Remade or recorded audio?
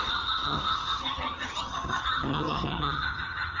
remade